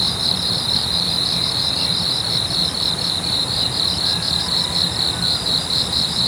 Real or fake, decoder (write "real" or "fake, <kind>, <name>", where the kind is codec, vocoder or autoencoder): fake, vocoder, BigVGAN v2